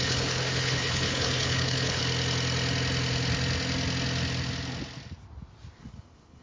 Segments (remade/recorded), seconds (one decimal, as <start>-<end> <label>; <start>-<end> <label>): 0.0-2.0 remade; 2.0-5.8 recorded; 5.8-6.4 remade